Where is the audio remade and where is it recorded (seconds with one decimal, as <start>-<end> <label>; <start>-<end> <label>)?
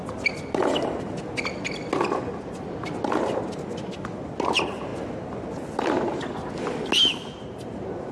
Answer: 0.0-8.1 recorded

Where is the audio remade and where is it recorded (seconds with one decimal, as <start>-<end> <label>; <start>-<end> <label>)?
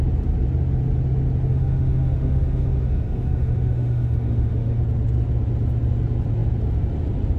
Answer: 0.0-1.5 recorded; 1.5-4.8 remade; 4.8-7.4 recorded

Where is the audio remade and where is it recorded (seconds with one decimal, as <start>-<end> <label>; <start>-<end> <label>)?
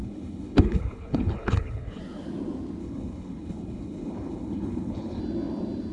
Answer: 0.0-2.0 remade; 2.0-2.8 recorded; 2.8-5.2 remade; 5.2-5.9 recorded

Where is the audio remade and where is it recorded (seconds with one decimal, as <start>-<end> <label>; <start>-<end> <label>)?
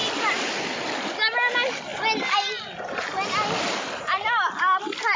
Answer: 0.0-5.2 recorded